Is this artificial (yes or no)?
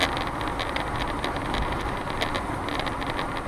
no